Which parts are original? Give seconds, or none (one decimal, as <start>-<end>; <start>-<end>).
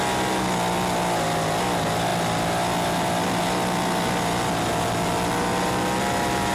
0.0-6.5